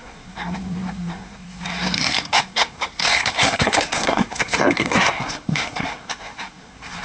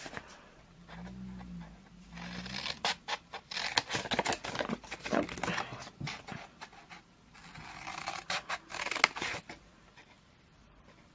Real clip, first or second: second